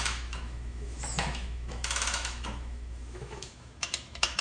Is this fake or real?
fake